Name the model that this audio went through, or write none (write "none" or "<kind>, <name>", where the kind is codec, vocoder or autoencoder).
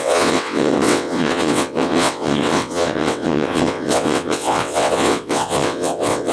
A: vocoder, WaveNeXt